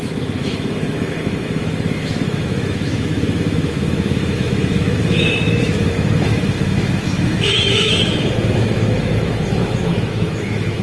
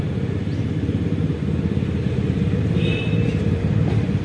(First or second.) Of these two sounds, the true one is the second